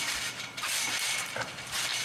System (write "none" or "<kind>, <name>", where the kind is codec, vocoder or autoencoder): vocoder, BigVGAN v2